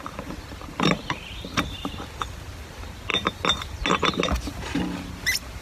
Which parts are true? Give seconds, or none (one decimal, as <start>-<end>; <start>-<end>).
0.0-5.6